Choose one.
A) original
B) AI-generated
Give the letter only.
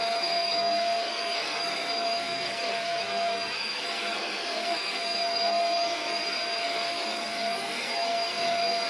B